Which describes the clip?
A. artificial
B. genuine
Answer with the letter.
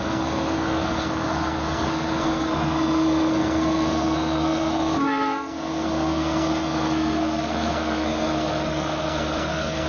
A